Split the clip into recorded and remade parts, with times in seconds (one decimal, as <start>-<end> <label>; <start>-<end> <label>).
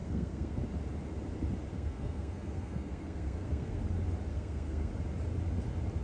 0.0-0.6 remade; 0.6-1.7 recorded; 1.7-3.8 remade; 3.8-4.3 recorded; 4.3-4.9 remade; 4.9-6.0 recorded